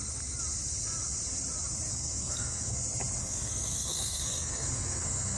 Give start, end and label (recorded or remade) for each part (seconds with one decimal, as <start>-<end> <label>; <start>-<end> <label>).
0.0-1.9 recorded; 1.9-2.8 remade; 2.8-3.2 recorded; 3.2-5.4 remade